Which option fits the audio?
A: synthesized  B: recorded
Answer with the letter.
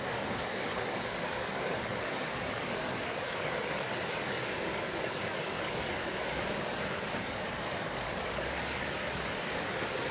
A